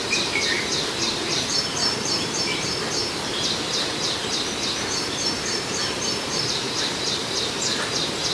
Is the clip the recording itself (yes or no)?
no